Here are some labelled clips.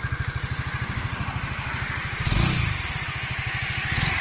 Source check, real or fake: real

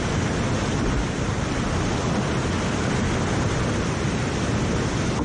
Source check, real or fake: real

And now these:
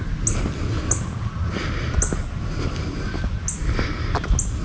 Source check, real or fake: real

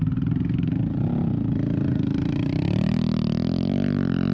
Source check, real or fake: real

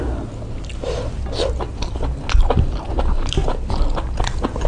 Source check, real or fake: real